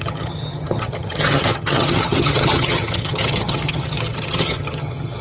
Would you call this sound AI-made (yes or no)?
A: yes